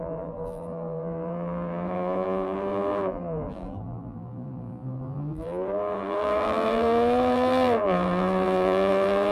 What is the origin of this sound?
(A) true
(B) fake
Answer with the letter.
B